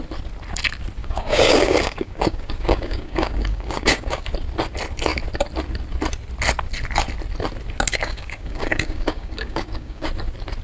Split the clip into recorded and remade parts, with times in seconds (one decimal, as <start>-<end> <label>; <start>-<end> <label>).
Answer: 0.0-1.0 recorded; 1.0-4.3 remade; 4.3-7.9 recorded; 7.9-10.1 remade; 10.1-10.6 recorded